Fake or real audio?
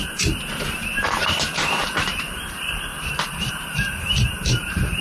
fake